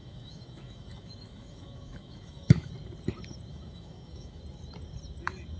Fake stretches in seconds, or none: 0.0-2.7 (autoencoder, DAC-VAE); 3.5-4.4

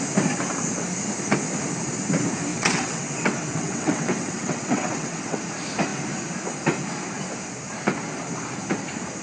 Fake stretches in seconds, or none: 2.5-5.4 (vocoder, WaveNeXt)

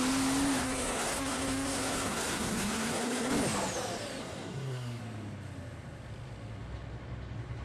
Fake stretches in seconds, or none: 0.6-3.3 (codec, SNAC); 4.2-5.0

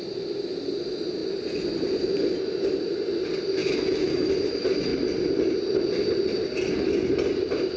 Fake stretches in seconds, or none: 3.6-4.3 (autoencoder, DAC-VAE)

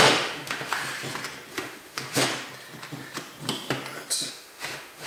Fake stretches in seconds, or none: 0.0-0.8 (autoencoder, DAC-VAE); 1.5-2.3; 4.3-5.1

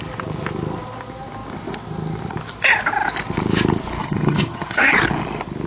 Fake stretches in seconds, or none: 4.0-4.9 (vocoder, HiFi-GAN)